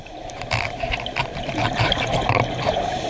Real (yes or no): no